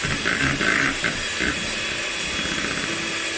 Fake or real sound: real